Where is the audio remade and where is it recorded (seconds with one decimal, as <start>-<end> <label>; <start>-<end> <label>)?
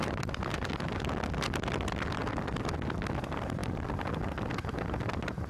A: 0.0-0.7 remade; 0.7-5.5 recorded